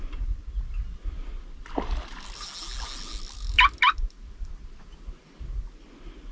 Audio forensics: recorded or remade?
recorded